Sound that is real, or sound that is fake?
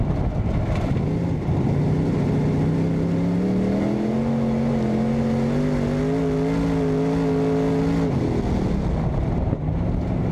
real